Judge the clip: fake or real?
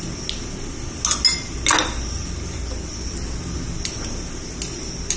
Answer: real